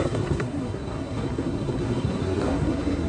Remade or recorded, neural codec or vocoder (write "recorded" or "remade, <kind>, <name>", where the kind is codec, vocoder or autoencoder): remade, codec, SNAC